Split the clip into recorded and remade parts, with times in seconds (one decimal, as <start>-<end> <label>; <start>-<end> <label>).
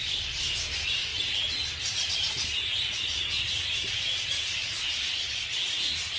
0.0-6.2 remade